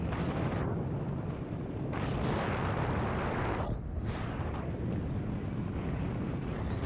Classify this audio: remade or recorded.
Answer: recorded